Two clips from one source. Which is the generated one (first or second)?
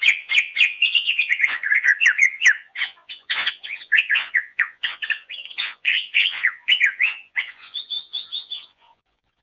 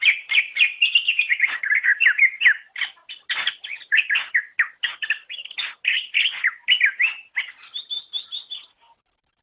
first